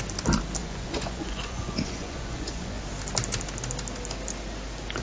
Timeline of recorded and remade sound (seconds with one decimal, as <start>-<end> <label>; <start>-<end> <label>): 0.0-0.6 recorded; 0.6-2.8 remade; 2.8-5.0 recorded